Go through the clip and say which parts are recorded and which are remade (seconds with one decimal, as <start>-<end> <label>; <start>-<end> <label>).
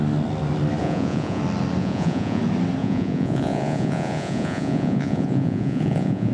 0.0-0.8 recorded; 0.8-1.4 remade; 1.4-1.8 recorded; 1.8-2.4 remade; 2.4-2.8 recorded; 2.8-6.3 remade